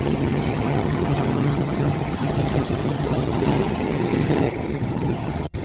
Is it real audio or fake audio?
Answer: fake